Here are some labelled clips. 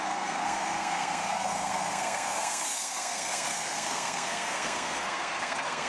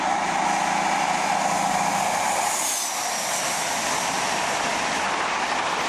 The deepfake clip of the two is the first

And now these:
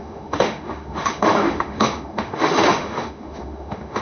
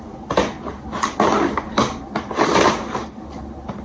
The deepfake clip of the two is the first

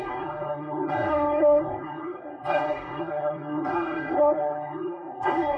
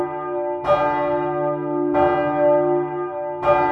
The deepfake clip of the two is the first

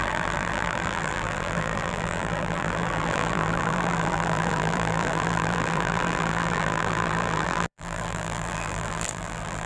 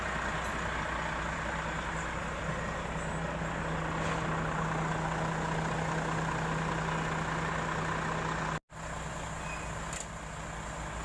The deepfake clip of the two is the first